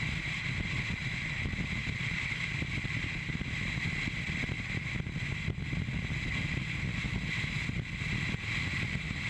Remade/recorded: recorded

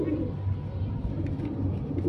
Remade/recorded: recorded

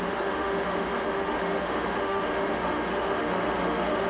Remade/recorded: remade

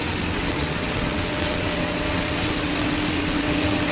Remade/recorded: remade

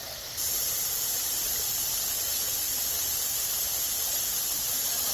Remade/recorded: recorded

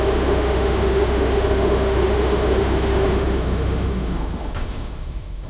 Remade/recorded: remade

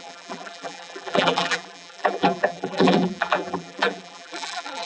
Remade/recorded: remade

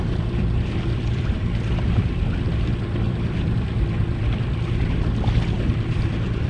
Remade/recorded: remade